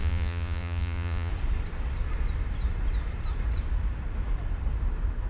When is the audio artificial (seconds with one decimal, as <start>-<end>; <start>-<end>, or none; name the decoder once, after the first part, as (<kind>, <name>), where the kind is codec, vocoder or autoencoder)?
0.0-1.3 (vocoder, Vocos)